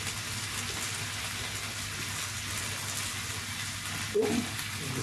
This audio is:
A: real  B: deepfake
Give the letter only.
A